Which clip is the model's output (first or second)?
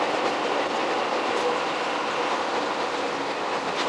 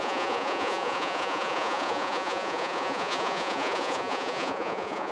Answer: second